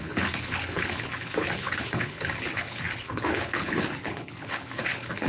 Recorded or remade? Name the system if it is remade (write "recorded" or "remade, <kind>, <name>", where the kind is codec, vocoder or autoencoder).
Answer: remade, codec, HILCodec